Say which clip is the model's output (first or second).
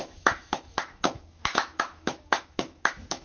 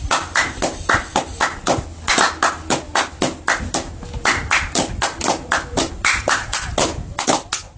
first